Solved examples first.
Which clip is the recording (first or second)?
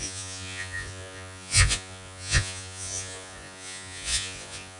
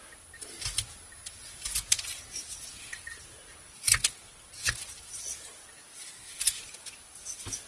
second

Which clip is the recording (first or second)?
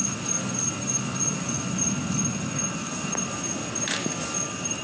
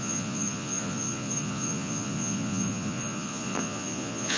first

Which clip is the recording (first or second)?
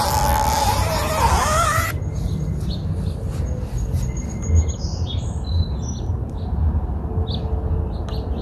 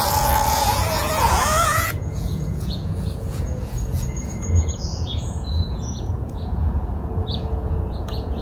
first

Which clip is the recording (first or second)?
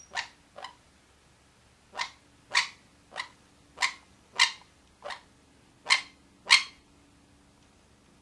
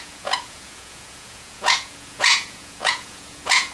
first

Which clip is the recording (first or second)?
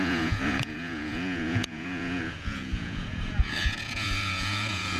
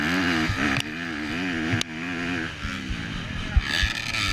second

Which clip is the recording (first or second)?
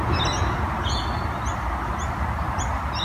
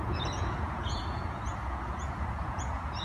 first